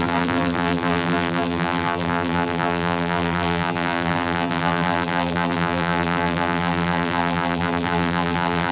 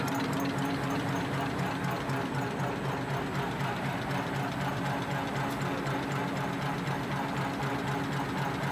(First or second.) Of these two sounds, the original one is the second